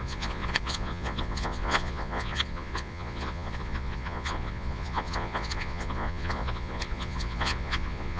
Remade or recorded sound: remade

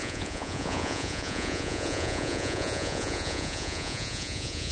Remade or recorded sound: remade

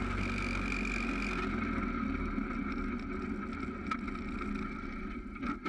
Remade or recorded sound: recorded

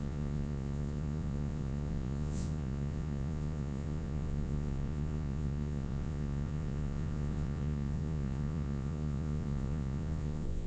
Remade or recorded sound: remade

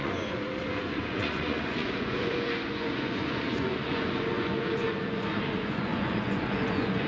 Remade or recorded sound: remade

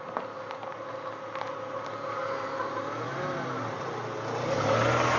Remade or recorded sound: recorded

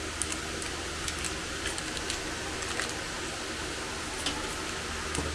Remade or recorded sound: recorded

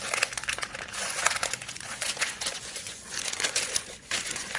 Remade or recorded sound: remade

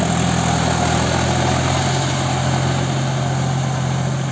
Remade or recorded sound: recorded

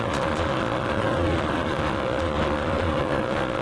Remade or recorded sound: remade